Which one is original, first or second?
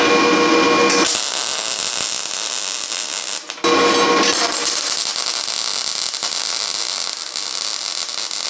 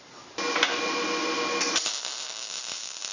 first